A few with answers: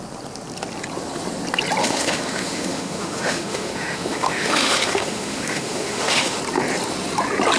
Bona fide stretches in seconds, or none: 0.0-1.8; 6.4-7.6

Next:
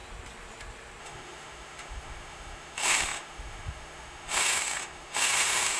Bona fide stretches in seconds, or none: 0.0-1.0

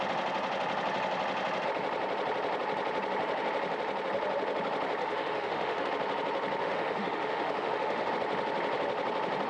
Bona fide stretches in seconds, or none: 0.0-5.0; 5.9-6.6; 8.1-9.5

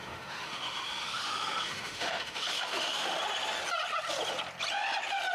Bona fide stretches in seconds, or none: 3.2-5.3

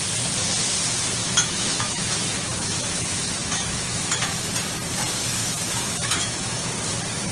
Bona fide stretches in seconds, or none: 0.0-1.2; 4.5-5.4; 6.7-7.3

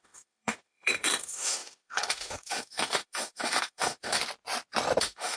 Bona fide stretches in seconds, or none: 4.2-5.0